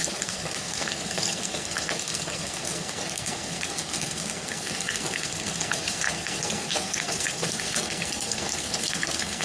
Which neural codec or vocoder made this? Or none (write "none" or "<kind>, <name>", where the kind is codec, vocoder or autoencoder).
codec, SNAC